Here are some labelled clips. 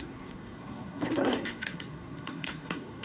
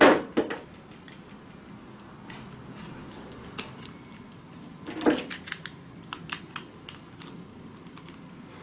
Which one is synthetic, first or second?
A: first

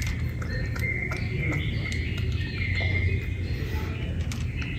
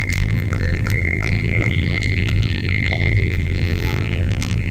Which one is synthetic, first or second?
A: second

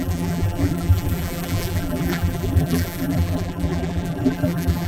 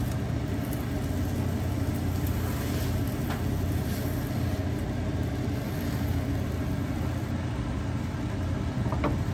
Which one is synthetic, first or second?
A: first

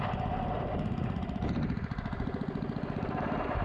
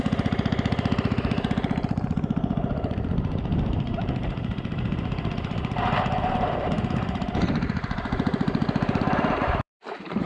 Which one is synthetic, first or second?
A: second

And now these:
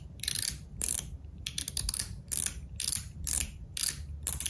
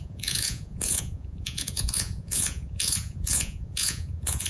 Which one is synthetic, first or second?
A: second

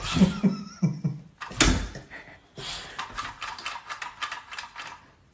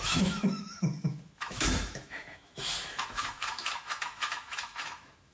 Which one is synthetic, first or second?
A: second